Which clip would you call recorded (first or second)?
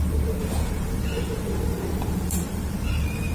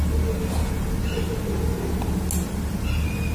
second